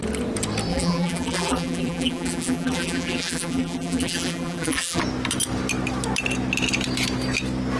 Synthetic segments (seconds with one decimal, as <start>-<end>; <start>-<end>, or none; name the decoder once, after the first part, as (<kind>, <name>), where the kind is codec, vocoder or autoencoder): 0.7-5.0 (vocoder, BigVGAN v2)